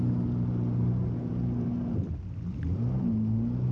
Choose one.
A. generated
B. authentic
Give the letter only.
B